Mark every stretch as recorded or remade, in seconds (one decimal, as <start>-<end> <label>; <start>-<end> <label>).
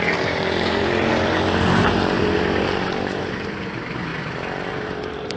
0.0-4.1 remade; 4.1-4.7 recorded; 4.7-5.4 remade